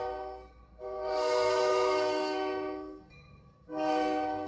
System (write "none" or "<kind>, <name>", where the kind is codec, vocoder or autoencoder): codec, SNAC